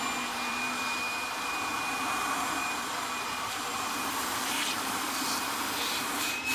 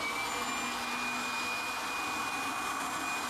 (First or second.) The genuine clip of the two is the second